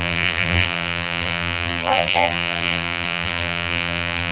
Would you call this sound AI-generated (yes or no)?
yes